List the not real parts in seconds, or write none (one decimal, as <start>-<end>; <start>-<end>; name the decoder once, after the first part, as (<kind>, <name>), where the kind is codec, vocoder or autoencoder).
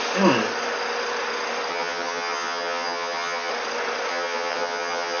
1.7-3.5 (vocoder, HiFi-GAN); 4.1-5.2